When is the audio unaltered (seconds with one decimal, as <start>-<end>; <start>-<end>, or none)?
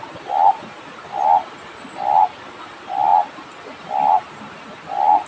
0.0-5.3